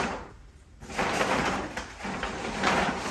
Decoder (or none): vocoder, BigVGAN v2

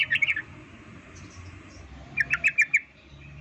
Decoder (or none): none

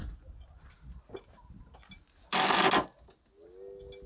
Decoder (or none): none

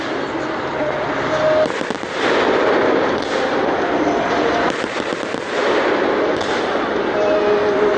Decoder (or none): none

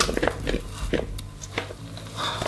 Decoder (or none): none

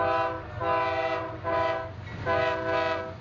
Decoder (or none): none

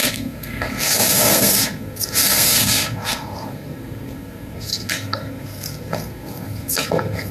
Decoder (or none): codec, SNAC